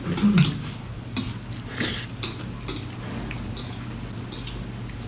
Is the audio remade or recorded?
recorded